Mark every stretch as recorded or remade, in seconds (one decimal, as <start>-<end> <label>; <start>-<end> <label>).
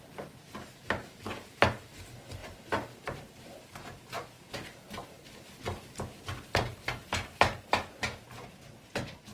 0.0-2.4 recorded; 2.4-3.5 remade; 3.5-7.0 recorded; 7.0-7.8 remade; 7.8-9.3 recorded